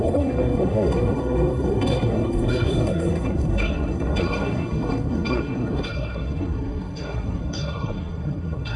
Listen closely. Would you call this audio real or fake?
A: fake